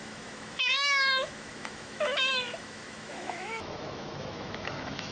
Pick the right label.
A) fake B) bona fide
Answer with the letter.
A